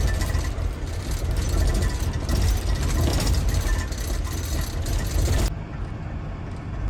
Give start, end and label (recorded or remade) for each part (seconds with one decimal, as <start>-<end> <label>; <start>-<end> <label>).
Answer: 0.0-3.1 recorded; 3.1-5.9 remade; 5.9-6.9 recorded